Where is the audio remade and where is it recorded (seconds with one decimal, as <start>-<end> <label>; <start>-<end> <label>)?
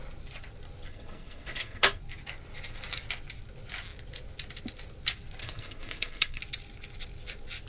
0.0-0.9 recorded; 0.9-2.0 remade; 2.0-5.4 recorded; 5.4-6.4 remade; 6.4-7.7 recorded